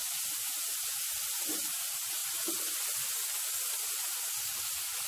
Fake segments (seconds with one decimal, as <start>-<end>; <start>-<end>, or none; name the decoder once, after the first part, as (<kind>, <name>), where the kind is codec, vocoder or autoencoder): 0.0-2.2 (vocoder, BigVGAN v2)